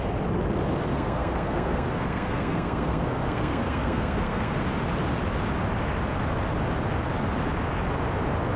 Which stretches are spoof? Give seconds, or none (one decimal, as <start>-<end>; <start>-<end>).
0.9-4.6